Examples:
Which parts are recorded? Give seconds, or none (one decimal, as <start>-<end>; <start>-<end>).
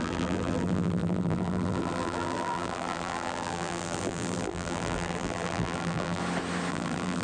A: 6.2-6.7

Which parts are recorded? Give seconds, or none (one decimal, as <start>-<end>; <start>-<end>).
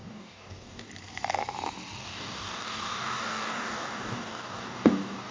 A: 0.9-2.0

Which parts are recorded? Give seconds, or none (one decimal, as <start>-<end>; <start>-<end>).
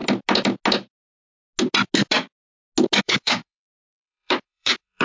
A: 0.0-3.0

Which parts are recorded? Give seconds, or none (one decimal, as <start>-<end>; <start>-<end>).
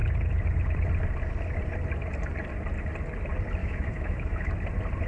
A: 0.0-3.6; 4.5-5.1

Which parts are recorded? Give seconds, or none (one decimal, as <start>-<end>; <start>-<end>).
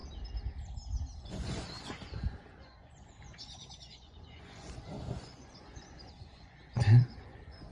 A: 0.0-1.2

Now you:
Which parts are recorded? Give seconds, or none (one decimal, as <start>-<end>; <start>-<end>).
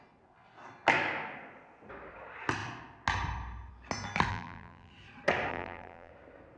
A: 0.0-4.3; 4.9-5.5; 6.1-6.6